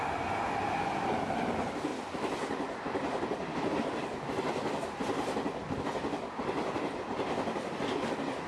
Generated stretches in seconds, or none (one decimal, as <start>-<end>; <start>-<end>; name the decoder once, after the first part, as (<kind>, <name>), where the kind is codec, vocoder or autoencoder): none